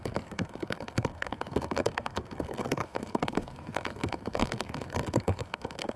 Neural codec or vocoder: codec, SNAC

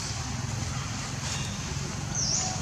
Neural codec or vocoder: none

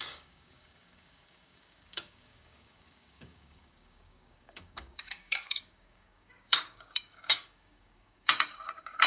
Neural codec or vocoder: codec, DAC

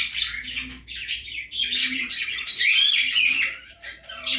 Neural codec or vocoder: vocoder, BigVGAN v2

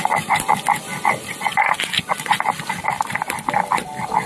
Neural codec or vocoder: none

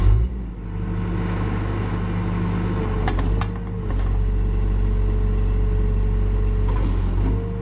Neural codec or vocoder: none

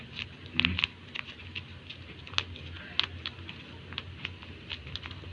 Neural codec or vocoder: none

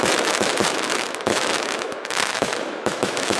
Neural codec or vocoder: autoencoder, DAC-VAE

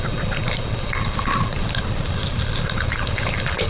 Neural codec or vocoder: none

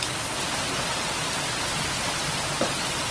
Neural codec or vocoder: none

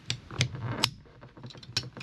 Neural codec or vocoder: none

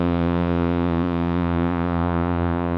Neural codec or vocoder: vocoder, Vocos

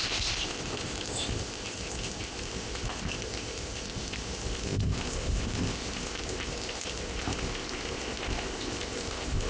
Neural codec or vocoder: codec, ZipCodec